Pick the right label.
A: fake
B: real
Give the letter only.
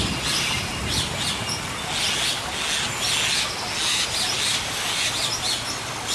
B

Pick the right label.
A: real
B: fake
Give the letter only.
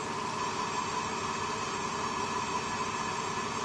A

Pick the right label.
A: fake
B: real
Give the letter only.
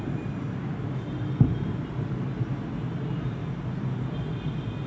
B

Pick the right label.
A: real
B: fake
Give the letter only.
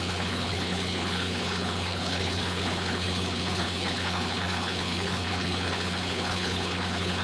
B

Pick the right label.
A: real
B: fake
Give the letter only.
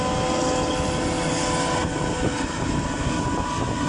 A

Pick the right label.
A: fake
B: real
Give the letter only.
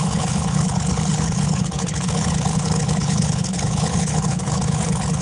A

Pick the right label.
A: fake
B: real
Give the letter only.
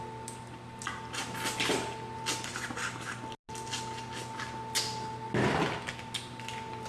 B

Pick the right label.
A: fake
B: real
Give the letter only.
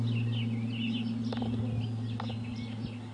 B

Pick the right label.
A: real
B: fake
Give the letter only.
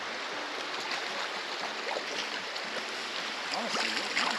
A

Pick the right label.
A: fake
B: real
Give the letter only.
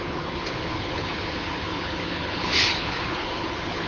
A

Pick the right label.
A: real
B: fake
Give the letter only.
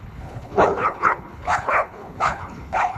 B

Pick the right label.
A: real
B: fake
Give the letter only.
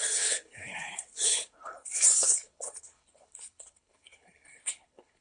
B